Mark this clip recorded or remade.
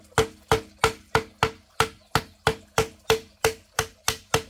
recorded